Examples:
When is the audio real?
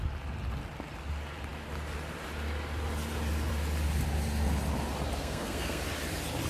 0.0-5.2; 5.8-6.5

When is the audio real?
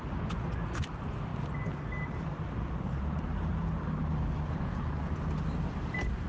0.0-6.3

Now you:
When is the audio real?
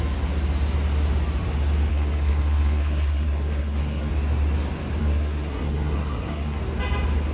0.0-1.9; 4.1-5.0; 6.6-7.3